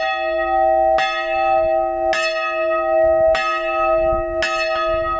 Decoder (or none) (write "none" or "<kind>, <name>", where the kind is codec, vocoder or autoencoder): none